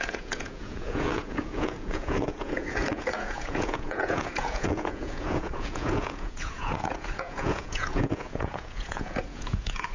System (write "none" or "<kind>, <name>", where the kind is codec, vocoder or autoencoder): vocoder, Vocos